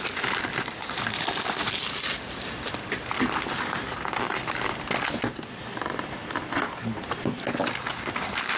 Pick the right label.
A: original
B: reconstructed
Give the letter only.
A